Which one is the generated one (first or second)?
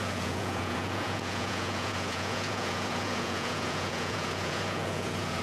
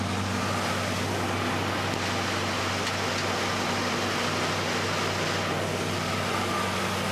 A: first